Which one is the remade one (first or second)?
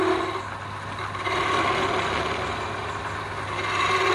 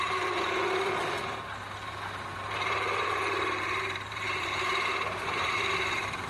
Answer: second